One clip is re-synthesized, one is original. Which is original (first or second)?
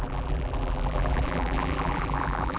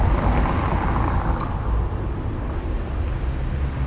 second